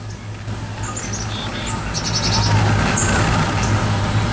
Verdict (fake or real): real